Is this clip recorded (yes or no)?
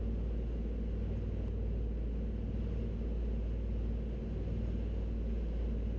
yes